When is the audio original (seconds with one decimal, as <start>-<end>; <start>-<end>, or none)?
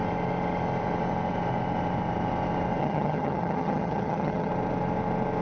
0.0-2.8; 4.5-5.4